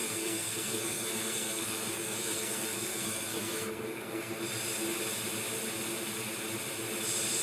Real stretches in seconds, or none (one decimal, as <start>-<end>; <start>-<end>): 4.4-7.4